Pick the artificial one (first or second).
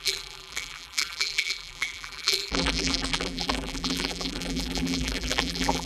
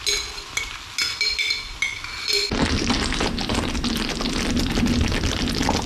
first